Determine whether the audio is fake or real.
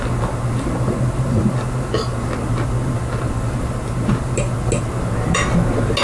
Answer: real